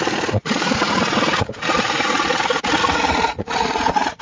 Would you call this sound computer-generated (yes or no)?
yes